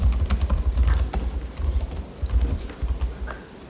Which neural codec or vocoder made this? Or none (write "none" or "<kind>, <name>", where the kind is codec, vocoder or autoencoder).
none